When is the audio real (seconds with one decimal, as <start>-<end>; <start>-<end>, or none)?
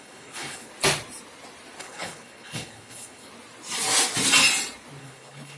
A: 0.7-1.8; 3.3-5.0